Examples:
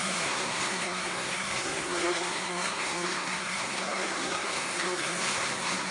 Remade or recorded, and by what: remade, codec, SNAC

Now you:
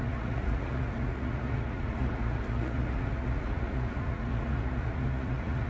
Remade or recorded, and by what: remade, vocoder, Vocos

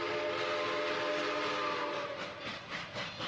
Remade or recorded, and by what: recorded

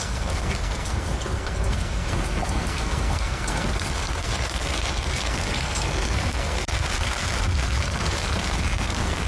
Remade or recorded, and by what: remade, codec, SNAC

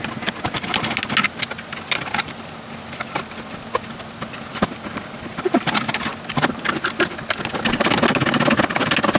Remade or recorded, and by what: recorded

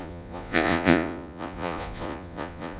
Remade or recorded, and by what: remade, vocoder, Vocos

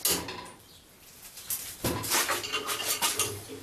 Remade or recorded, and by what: recorded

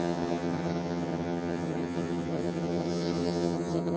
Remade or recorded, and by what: remade, vocoder, HiFi-GAN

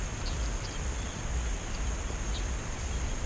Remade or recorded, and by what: remade, vocoder, BigVGAN v2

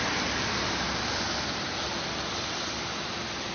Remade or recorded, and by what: recorded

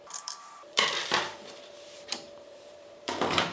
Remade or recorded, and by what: remade, vocoder, BigVGAN v2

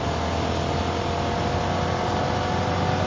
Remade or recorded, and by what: recorded